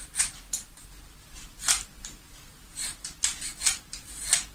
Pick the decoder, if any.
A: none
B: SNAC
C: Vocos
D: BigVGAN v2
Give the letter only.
D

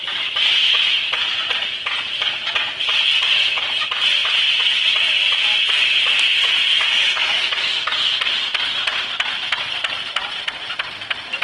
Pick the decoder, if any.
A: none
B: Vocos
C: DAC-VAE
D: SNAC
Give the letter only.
A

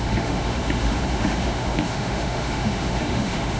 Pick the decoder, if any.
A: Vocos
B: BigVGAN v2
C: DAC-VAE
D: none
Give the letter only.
C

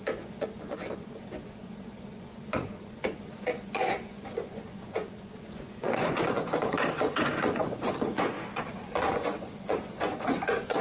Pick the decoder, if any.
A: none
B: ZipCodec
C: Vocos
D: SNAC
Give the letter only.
C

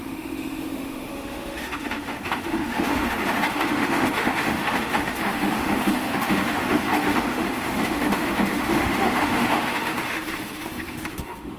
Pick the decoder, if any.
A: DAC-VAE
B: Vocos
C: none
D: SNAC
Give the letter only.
A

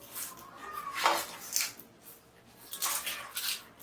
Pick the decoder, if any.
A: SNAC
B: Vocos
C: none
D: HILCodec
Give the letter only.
C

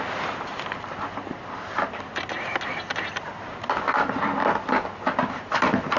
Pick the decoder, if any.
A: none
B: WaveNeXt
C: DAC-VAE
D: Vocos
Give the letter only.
A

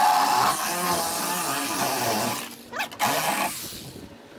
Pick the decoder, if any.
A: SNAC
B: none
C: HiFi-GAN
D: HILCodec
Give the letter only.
B